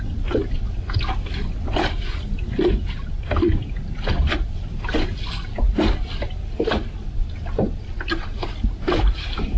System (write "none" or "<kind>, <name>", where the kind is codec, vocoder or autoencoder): none